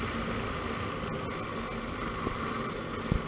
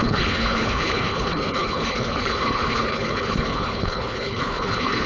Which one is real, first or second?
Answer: first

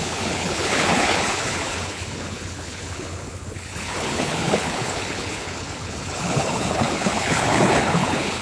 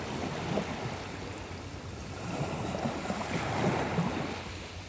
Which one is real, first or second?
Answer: second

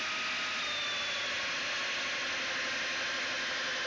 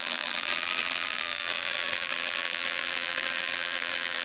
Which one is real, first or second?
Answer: first